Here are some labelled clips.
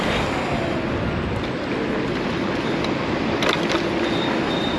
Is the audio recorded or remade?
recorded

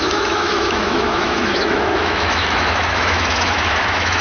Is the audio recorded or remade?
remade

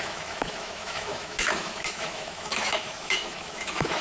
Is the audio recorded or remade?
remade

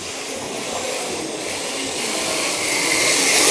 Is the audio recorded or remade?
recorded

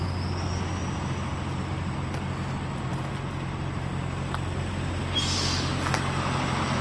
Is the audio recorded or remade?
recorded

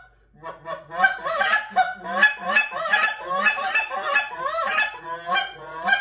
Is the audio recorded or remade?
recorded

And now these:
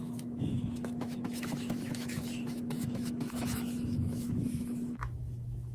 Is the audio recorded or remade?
remade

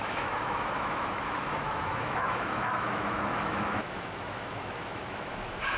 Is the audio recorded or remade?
remade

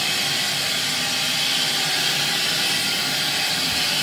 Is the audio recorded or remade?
recorded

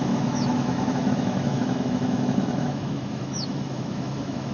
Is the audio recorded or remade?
remade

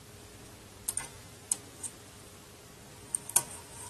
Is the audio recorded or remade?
recorded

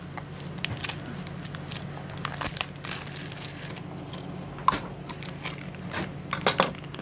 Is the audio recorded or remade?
recorded